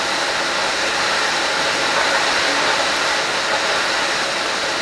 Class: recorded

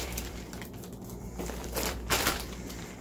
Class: remade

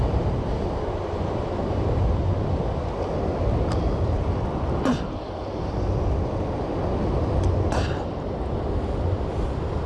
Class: recorded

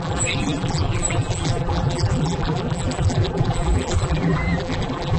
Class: remade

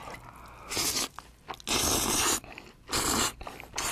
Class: recorded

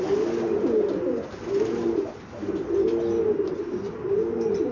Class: recorded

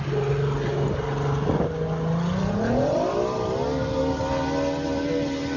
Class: recorded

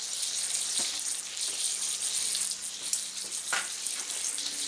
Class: recorded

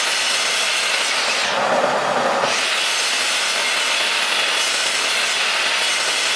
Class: recorded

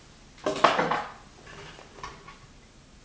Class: recorded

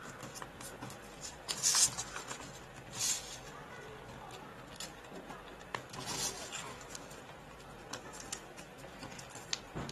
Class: recorded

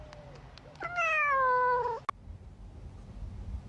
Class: recorded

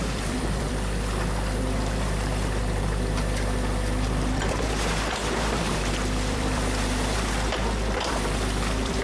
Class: remade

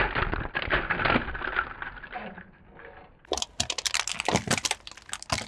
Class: recorded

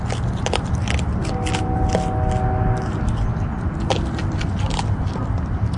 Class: recorded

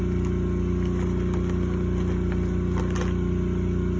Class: recorded